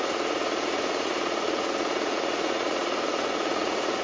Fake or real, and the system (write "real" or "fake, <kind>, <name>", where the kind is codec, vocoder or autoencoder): fake, vocoder, Vocos